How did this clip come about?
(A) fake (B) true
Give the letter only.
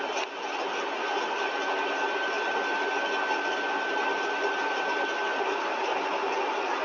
B